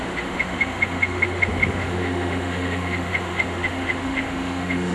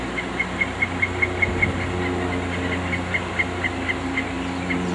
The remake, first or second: first